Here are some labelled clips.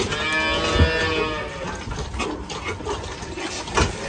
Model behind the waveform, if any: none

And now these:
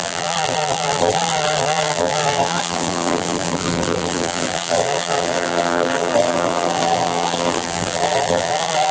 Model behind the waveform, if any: vocoder, BigVGAN v2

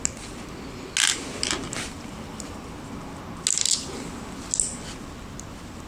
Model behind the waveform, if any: none